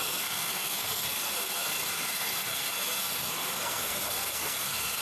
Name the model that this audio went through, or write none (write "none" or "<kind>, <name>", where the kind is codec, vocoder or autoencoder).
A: codec, SNAC